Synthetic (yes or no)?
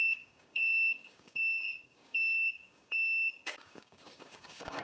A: yes